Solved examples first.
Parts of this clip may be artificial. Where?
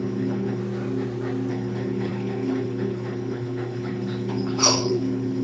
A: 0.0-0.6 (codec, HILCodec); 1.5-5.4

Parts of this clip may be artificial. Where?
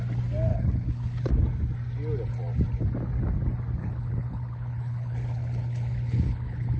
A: 0.5-1.3 (codec, HILCodec); 3.8-6.8